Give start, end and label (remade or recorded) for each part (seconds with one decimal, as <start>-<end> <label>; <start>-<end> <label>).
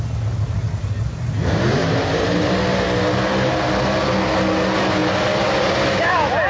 0.0-1.8 recorded; 1.8-2.4 remade; 2.4-6.5 recorded